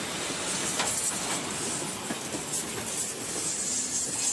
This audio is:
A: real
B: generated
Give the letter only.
A